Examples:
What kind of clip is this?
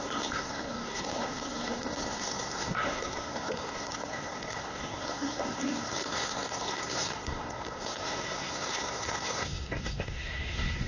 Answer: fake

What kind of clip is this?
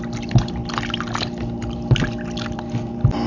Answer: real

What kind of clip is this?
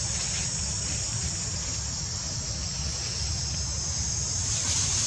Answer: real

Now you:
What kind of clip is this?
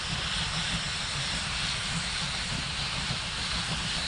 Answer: real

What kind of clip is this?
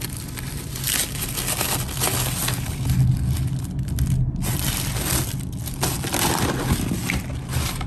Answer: real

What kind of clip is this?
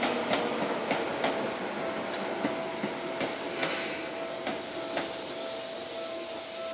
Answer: real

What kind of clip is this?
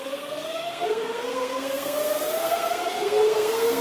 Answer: fake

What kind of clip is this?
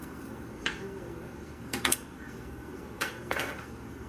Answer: fake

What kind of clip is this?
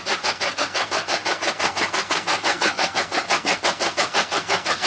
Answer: fake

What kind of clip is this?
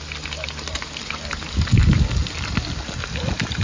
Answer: real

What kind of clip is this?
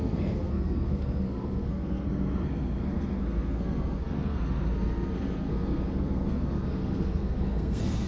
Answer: fake